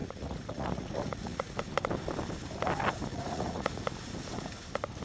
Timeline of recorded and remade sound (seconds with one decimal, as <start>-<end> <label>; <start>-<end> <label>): 0.0-1.6 remade; 1.6-3.1 recorded; 3.1-3.8 remade; 3.8-5.0 recorded